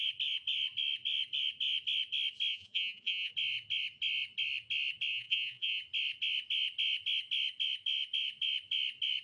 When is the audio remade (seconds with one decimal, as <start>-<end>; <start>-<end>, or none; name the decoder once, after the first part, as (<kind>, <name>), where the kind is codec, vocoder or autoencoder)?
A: 2.5-3.3 (vocoder, Vocos); 5.1-5.8